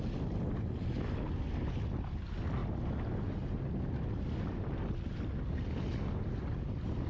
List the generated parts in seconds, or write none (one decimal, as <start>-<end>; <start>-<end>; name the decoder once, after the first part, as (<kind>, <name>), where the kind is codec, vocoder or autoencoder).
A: none